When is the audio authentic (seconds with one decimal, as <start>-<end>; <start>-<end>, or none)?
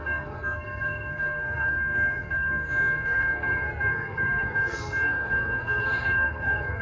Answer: none